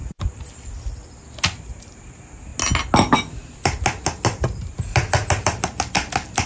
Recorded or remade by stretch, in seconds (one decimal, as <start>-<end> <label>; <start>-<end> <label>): 0.0-6.5 recorded